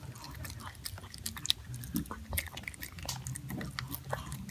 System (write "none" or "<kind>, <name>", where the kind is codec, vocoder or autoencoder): none